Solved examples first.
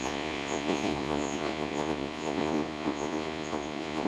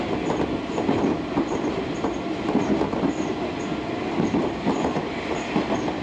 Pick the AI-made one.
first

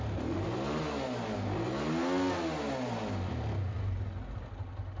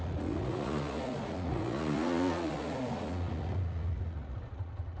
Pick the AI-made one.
second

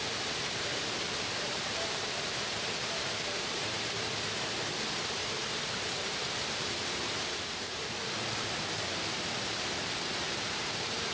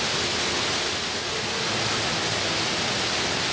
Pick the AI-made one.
first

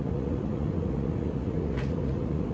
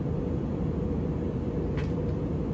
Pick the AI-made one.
first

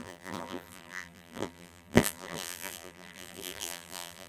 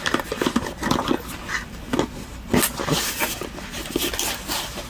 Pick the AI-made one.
first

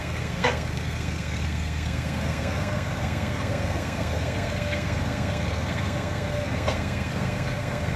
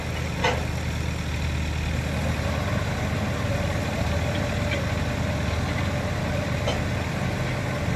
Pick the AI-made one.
first